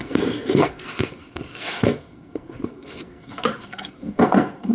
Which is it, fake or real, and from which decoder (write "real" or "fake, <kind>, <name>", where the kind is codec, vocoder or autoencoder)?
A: fake, codec, SNAC